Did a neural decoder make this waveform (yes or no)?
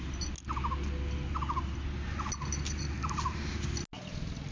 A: no